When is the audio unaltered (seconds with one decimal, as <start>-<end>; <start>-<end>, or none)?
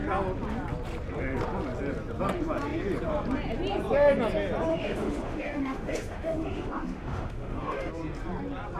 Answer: 0.0-4.7; 7.9-8.8